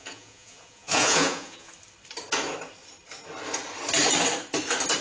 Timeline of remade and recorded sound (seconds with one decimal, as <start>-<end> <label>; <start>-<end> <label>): 0.0-1.7 remade; 1.7-5.0 recorded